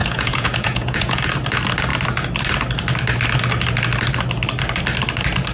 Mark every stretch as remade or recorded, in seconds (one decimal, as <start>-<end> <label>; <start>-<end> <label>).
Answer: 0.0-1.2 remade; 1.2-5.5 recorded